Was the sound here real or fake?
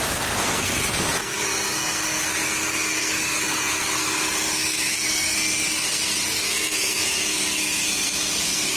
fake